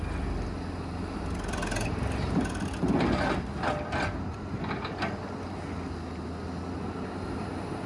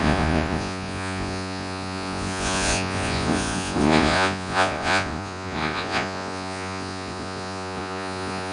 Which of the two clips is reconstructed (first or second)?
second